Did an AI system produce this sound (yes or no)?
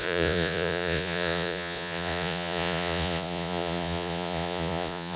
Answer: yes